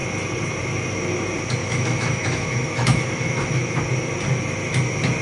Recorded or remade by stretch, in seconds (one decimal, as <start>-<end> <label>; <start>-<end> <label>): 0.0-1.6 recorded; 1.6-3.8 remade; 3.8-5.2 recorded